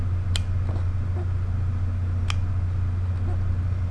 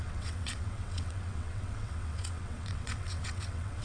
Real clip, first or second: first